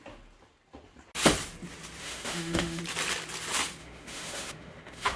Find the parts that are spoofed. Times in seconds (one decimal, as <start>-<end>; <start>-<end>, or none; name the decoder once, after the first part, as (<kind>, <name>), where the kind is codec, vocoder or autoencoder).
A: 2.0-2.8 (autoencoder, DAC-VAE); 3.8-5.2